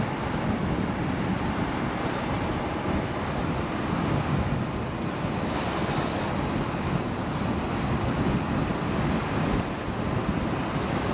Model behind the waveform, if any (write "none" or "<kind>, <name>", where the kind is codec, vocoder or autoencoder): none